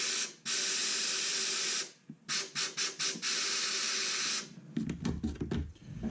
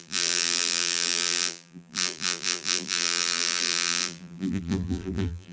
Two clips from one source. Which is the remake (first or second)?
second